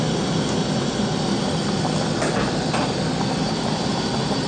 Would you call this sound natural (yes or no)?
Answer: yes